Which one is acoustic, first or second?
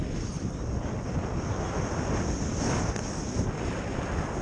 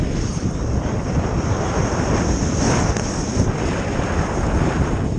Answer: first